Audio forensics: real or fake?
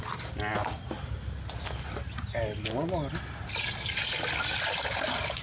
real